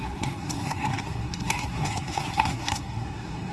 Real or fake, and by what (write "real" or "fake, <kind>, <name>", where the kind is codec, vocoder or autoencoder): fake, codec, SNAC